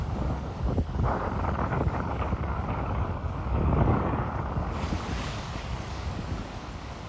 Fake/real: fake